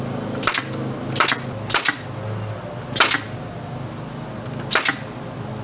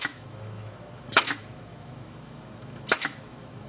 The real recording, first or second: first